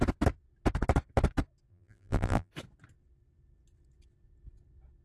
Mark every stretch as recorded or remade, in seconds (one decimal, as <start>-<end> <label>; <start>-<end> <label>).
0.0-1.7 recorded; 1.7-2.5 remade; 2.5-5.0 recorded